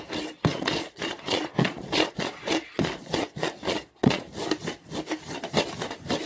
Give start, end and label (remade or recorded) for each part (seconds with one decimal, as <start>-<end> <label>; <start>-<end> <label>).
0.0-0.5 recorded; 0.5-4.3 remade; 4.3-6.3 recorded